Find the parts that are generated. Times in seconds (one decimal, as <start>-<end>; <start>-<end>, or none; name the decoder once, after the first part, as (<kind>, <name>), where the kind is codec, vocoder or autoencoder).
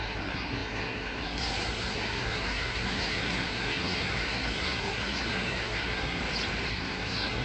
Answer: 0.0-6.2 (codec, SNAC); 6.7-7.4